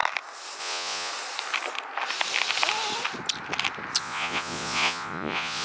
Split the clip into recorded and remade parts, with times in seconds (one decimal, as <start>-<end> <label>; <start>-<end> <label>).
0.0-0.6 recorded; 0.6-1.1 remade; 1.1-4.0 recorded; 4.0-5.6 remade